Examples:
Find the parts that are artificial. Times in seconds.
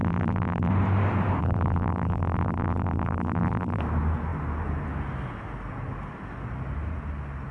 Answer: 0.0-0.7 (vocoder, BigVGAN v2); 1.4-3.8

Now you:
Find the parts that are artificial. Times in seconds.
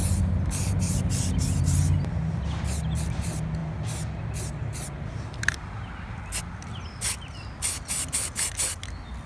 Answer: none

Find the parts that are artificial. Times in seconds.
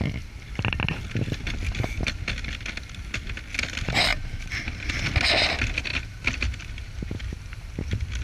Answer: 4.1-4.9 (vocoder, BigVGAN v2); 5.9-7.7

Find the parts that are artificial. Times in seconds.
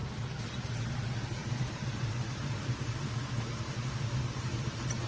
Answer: 0.7-5.1 (vocoder, BigVGAN v2)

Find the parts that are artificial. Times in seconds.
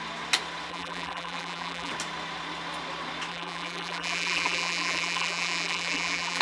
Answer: 0.7-1.9 (vocoder, BigVGAN v2); 3.3-6.4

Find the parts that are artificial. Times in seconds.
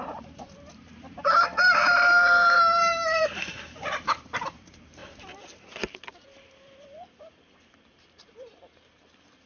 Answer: 0.0-5.0 (vocoder, BigVGAN v2); 8.0-9.5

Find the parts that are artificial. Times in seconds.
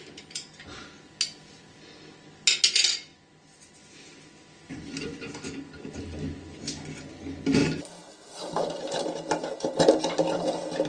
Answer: 7.6-9.5 (vocoder, BigVGAN v2)